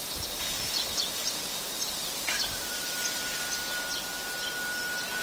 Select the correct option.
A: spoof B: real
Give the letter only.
B